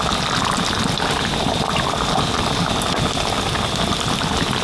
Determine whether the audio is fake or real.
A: real